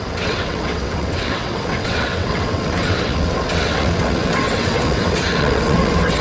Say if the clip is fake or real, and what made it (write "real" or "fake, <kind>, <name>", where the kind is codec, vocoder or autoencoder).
fake, vocoder, WaveNeXt